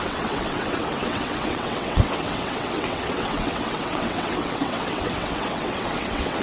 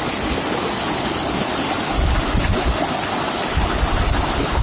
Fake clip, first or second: first